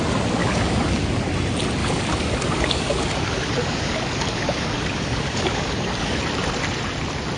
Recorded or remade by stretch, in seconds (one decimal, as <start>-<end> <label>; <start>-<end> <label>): 0.0-0.4 recorded; 0.4-1.0 remade; 1.0-1.8 recorded; 1.8-6.2 remade; 6.2-7.4 recorded